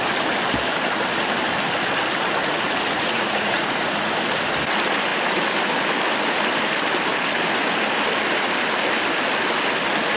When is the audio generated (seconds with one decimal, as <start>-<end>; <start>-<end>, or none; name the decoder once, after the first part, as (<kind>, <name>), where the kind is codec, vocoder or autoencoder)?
2.4-4.1 (vocoder, Vocos)